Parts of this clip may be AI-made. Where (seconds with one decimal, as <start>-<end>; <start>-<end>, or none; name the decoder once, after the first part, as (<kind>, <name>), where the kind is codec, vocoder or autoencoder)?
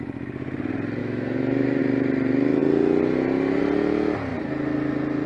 1.0-1.8 (autoencoder, DAC-VAE)